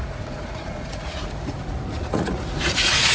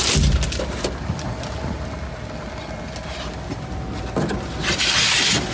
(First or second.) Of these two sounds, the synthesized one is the first